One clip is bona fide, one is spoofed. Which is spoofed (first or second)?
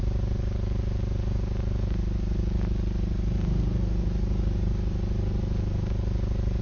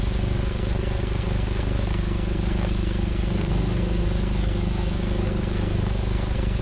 second